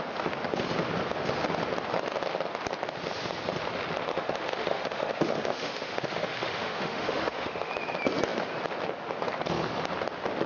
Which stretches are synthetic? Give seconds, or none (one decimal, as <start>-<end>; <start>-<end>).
4.1-7.7